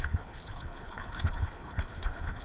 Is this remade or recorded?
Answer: remade